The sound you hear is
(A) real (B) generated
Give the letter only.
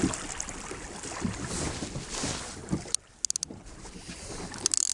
A